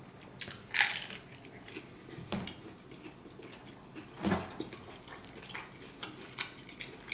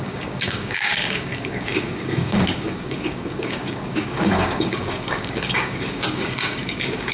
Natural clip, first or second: first